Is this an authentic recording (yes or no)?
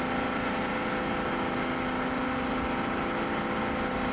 yes